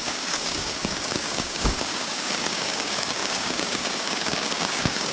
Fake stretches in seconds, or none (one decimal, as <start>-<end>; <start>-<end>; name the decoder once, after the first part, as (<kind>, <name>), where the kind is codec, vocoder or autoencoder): 0.0-5.1 (codec, DAC)